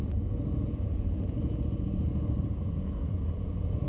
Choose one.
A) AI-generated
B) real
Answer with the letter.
A